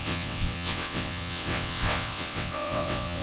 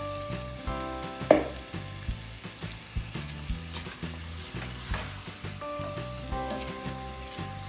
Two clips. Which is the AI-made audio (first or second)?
first